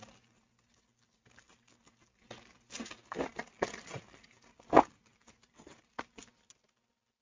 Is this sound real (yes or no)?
yes